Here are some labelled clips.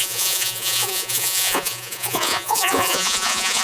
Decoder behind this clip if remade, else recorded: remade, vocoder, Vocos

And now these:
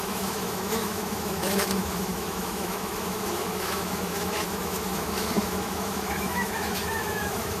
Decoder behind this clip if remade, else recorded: remade, autoencoder, DAC-VAE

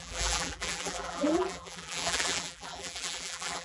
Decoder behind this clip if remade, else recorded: remade, vocoder, BigVGAN v2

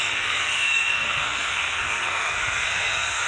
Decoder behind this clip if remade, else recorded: remade, codec, SNAC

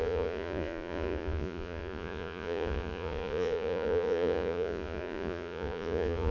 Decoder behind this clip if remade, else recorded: remade, vocoder, Vocos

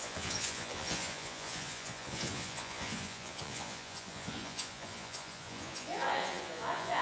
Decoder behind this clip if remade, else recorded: remade, vocoder, Vocos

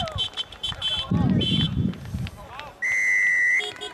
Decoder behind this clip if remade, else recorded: recorded